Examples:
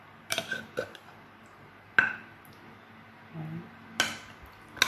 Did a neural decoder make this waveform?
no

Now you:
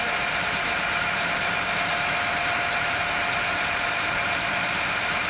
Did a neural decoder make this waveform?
yes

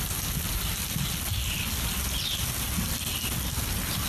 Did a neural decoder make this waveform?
no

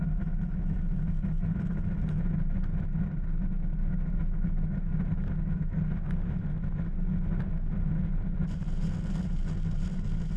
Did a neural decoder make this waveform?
no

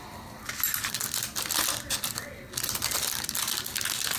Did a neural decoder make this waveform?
no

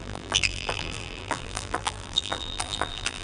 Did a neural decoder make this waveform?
yes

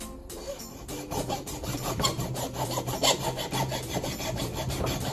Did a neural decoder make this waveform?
yes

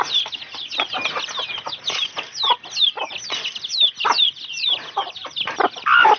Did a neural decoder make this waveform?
no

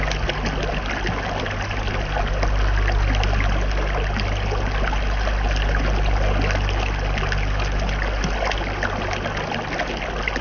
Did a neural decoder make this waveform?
no